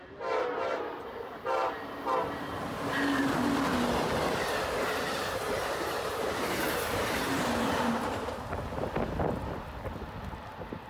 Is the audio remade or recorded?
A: recorded